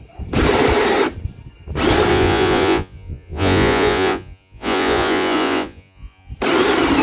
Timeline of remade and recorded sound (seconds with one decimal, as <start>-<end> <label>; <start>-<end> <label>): 0.0-2.1 recorded; 2.1-6.3 remade; 6.3-7.0 recorded

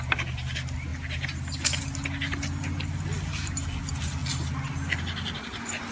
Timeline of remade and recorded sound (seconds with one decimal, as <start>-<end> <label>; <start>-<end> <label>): 0.0-5.9 recorded